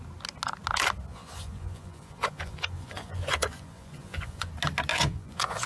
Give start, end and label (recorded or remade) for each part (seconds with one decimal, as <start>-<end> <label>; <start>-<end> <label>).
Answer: 0.0-1.1 recorded; 1.1-4.5 remade; 4.5-4.9 recorded; 4.9-5.7 remade